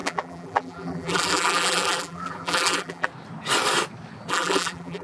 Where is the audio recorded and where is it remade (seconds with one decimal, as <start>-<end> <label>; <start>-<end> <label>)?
0.0-3.1 remade; 3.1-4.3 recorded; 4.3-5.0 remade